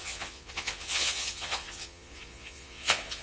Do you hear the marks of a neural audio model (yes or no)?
yes